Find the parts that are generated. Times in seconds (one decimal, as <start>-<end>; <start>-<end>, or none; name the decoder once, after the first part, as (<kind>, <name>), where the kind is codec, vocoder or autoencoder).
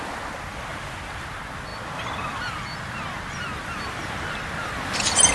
none